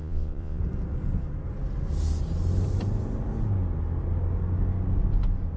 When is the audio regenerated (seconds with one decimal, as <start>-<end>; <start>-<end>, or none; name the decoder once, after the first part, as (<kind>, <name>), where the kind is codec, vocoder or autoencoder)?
0.0-0.6 (vocoder, Vocos)